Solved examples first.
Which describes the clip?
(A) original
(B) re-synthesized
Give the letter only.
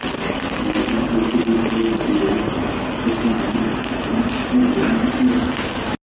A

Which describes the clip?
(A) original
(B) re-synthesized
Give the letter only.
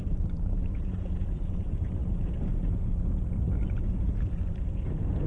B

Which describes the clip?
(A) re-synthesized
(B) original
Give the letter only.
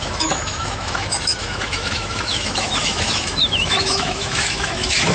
A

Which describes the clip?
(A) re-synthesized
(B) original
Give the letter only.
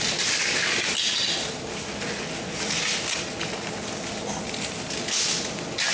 B